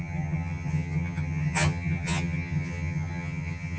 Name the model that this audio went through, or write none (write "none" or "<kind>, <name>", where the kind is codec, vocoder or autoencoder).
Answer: vocoder, HiFi-GAN